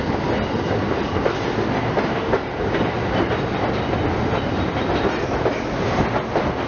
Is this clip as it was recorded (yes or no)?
yes